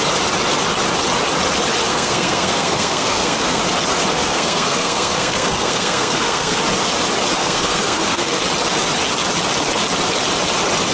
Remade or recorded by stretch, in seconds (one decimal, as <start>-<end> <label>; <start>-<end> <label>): 0.0-1.9 recorded; 1.9-3.6 remade; 3.6-4.1 recorded; 4.1-6.6 remade; 6.6-7.4 recorded; 7.4-8.4 remade; 8.4-10.9 recorded

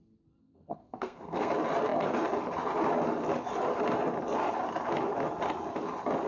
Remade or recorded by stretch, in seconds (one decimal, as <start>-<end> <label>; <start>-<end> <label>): 0.0-0.4 recorded; 0.4-1.5 remade; 1.5-6.3 recorded

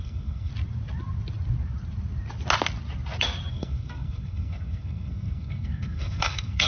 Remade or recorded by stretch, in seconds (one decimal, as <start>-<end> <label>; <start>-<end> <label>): 0.0-0.5 remade; 0.5-3.5 recorded; 3.5-6.7 remade

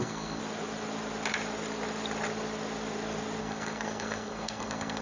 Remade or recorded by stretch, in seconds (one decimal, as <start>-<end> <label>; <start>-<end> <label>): 0.0-0.4 remade; 0.4-3.4 recorded; 3.4-5.0 remade

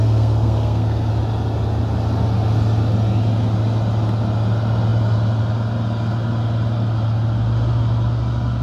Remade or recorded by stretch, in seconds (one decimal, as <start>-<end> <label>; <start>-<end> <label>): 0.0-1.1 remade; 1.1-8.6 recorded

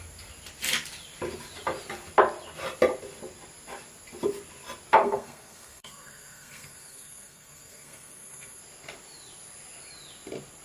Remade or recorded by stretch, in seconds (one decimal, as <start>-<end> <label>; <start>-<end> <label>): 0.0-5.0 recorded; 5.0-8.6 remade; 8.6-10.6 recorded

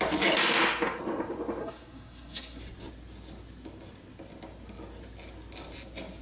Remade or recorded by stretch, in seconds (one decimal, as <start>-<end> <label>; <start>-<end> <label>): 0.0-1.6 recorded; 1.6-2.6 remade; 2.6-6.2 recorded

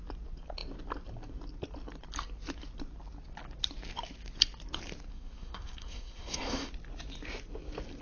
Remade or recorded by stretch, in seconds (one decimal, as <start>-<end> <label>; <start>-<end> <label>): 0.0-5.1 recorded; 5.1-6.7 remade; 6.7-8.0 recorded